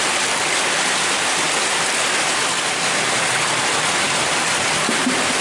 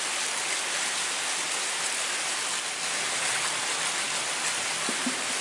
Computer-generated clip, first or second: first